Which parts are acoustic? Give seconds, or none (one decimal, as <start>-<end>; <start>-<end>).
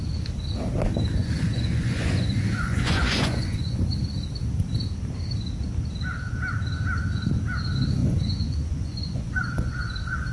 0.0-1.2; 3.9-8.0; 9.8-10.3